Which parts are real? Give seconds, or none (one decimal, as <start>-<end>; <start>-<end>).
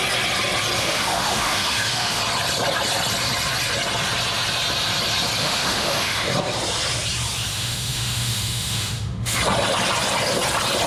0.0-0.8; 2.2-5.4; 6.3-7.5; 9.4-10.9